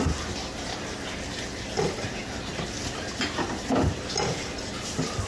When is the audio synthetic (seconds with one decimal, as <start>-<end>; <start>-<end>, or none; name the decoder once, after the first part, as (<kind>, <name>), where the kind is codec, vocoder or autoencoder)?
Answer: none